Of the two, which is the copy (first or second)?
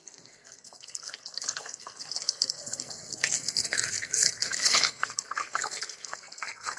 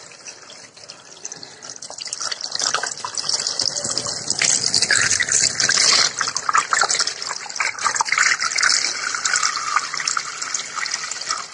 first